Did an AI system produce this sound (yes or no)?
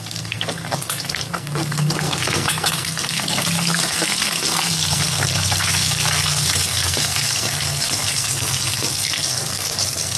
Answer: yes